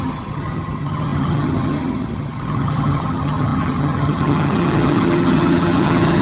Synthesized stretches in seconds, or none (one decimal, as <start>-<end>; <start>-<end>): 0.0-6.2